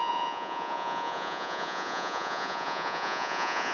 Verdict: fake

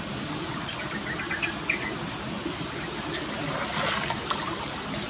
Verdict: real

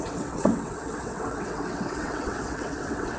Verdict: fake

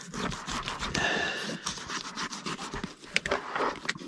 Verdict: real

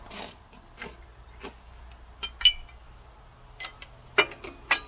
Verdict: real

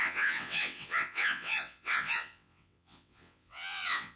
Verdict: fake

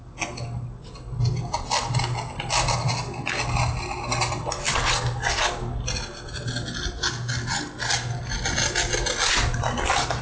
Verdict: real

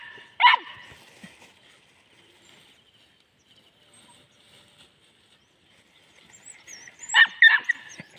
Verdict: real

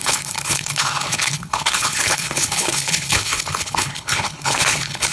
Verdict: fake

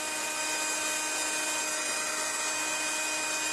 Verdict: real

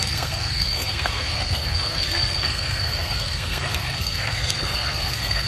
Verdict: fake